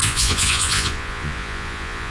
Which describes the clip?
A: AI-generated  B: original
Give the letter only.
A